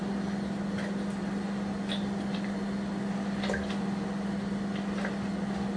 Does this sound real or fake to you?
real